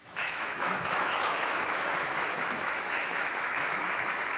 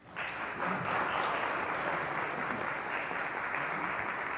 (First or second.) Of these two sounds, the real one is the second